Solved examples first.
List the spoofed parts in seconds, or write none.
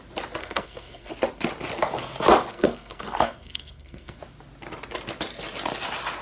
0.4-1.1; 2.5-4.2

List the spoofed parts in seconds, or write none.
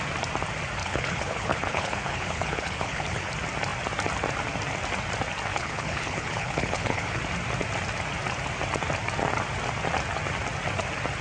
0.8-3.3; 5.5-7.2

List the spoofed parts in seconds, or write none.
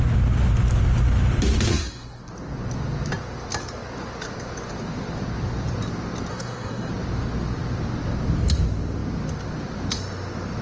1.7-2.3; 6.3-6.9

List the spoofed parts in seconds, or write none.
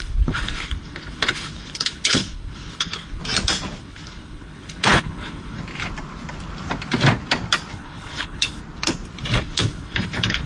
0.0-3.2; 3.8-5.6; 7.7-8.6; 9.4-10.5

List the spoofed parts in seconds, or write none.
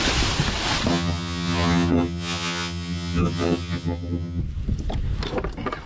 0.9-4.4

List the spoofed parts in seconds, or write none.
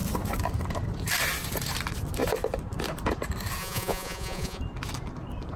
3.6-4.6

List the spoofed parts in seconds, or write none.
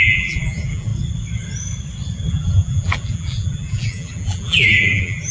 0.0-0.9; 2.3-5.3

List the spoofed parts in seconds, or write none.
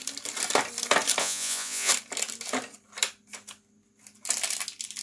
1.2-1.9